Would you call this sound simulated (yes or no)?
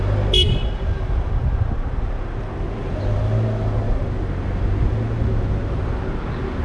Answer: no